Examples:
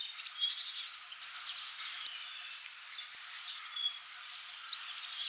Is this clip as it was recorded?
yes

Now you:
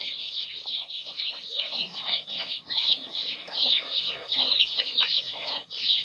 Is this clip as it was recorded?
no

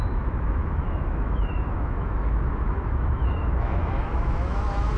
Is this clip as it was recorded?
no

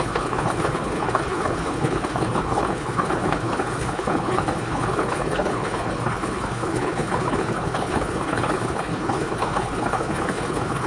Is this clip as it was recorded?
no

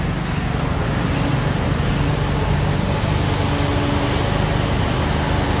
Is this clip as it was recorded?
yes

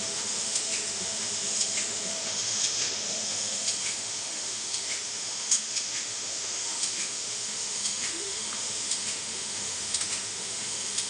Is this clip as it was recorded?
no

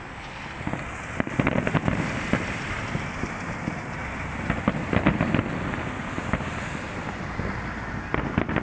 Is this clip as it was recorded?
yes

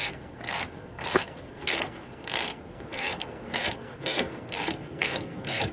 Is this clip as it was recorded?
no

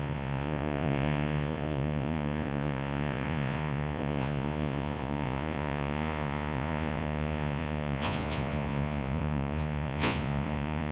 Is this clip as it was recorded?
no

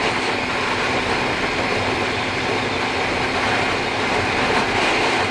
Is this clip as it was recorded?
yes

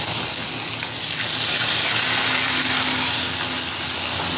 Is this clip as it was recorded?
yes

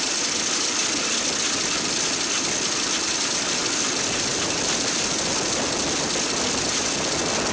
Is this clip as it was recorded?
yes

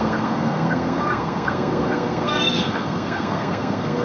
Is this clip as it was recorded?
no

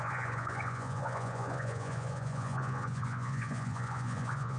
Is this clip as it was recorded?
no